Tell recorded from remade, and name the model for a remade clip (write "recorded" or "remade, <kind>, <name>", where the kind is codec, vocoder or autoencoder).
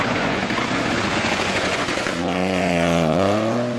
remade, vocoder, Vocos